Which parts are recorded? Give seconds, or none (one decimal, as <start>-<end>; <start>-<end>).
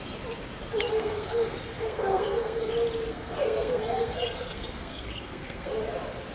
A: 0.0-0.9; 2.7-3.1; 5.7-6.3